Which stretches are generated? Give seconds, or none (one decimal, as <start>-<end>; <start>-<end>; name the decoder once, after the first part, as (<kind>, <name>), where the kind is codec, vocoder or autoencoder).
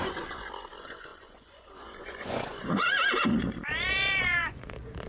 0.0-5.1 (vocoder, Vocos)